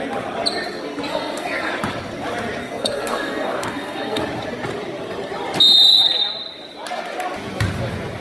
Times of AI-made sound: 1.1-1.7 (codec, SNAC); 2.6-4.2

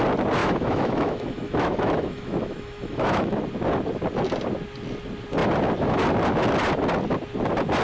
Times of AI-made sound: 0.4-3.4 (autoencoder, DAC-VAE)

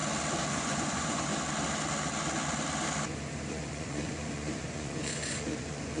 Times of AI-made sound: 0.5-1.3 (vocoder, Vocos); 3.5-6.0